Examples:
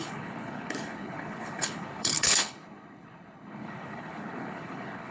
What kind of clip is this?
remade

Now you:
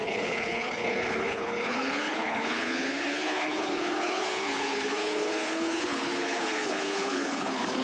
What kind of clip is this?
remade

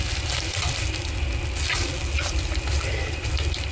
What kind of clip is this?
recorded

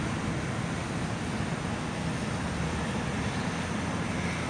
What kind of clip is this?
recorded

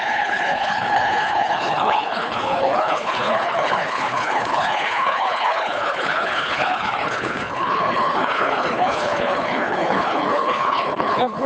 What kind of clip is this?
remade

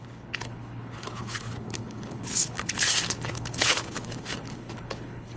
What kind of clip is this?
remade